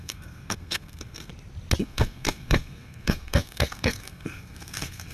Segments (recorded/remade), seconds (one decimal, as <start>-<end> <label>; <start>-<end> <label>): 0.0-1.3 remade; 1.3-1.8 recorded; 1.8-5.1 remade